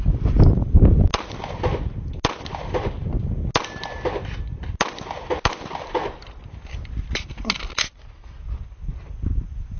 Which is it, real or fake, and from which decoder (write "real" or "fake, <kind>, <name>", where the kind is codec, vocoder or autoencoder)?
real